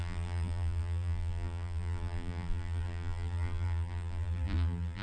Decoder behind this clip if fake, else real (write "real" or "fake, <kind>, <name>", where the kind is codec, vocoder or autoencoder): fake, vocoder, BigVGAN v2